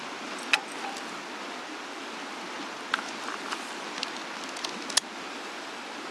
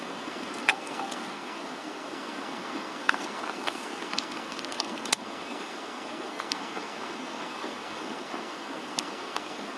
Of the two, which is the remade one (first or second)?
second